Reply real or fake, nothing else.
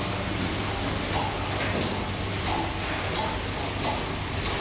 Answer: real